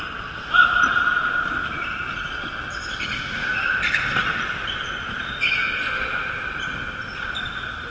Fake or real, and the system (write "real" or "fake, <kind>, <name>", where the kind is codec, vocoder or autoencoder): real